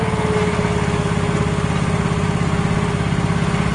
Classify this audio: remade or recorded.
recorded